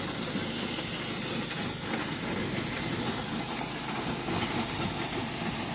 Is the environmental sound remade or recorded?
recorded